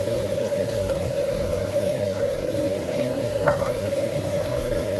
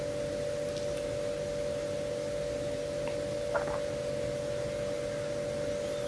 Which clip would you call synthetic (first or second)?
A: first